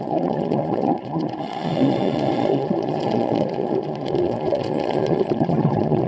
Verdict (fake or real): fake